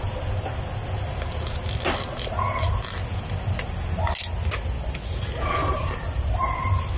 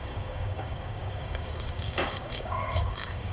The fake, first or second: second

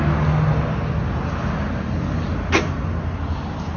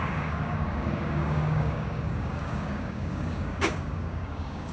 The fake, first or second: second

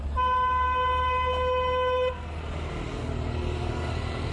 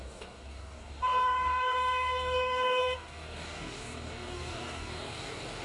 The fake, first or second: second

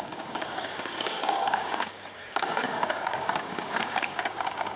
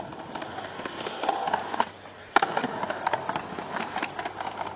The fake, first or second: first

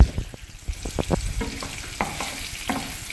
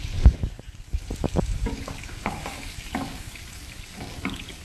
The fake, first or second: second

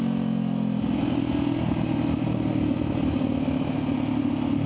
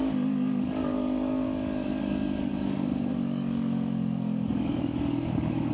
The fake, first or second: second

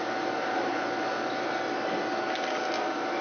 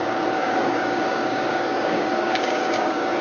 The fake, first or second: second